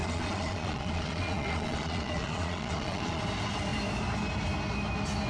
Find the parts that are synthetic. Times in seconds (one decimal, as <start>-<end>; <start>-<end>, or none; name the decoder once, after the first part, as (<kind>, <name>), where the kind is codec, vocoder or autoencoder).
0.0-3.2 (vocoder, Vocos)

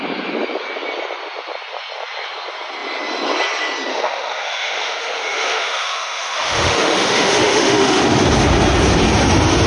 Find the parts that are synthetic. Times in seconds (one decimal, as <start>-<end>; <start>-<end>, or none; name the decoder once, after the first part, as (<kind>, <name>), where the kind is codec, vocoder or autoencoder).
3.9-8.0 (autoencoder, DAC-VAE)

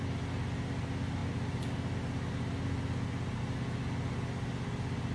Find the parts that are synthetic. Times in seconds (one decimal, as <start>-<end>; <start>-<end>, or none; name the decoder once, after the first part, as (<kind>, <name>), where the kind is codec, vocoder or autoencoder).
none

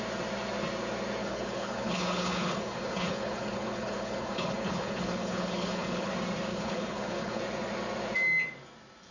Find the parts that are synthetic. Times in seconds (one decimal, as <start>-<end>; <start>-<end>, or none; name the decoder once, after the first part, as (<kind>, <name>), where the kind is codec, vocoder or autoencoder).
1.2-6.1 (codec, HILCodec); 6.5-7.4

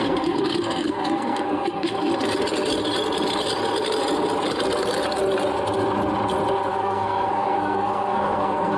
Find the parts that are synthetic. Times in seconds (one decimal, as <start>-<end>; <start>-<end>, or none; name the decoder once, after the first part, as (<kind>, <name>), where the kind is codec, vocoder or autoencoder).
0.0-2.1 (codec, SNAC); 6.7-8.8

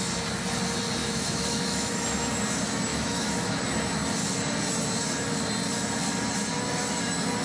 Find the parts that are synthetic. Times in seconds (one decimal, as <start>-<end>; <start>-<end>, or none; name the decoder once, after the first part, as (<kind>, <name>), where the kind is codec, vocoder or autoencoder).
1.0-1.9 (autoencoder, DAC-VAE); 2.9-3.6